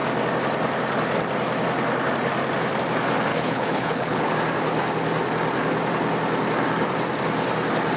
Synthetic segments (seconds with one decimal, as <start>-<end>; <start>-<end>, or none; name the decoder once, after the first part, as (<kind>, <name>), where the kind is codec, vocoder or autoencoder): 3.3-4.3 (codec, HILCodec)